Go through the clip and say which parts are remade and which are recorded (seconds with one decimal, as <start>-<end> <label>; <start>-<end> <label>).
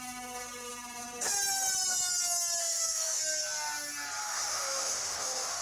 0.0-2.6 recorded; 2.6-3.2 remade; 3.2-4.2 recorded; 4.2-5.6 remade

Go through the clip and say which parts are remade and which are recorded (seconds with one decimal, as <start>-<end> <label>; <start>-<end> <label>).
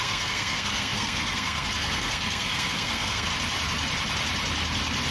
0.0-3.3 remade; 3.3-5.1 recorded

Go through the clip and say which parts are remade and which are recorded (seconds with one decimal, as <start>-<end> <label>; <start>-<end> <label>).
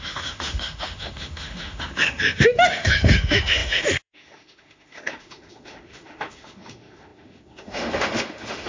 0.0-8.7 remade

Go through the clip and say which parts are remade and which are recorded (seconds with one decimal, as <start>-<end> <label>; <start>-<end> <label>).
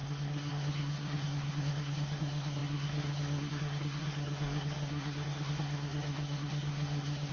0.0-7.3 remade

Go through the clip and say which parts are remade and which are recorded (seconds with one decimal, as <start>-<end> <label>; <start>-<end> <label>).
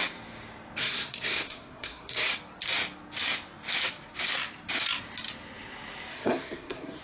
0.0-0.8 recorded; 0.8-2.3 remade; 2.3-6.1 recorded; 6.1-7.0 remade